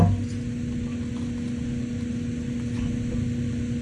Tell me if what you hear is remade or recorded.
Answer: recorded